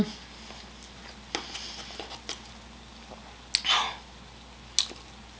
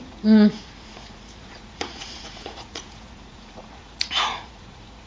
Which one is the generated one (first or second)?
second